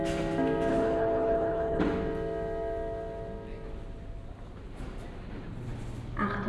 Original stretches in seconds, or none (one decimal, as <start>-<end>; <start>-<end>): 0.0-0.7; 1.8-6.5